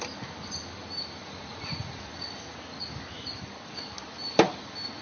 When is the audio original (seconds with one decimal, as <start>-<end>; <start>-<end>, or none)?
0.0-1.2; 2.0-5.0